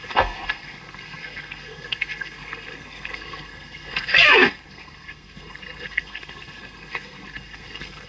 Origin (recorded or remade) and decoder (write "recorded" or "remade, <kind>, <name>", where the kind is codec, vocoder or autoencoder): remade, codec, SNAC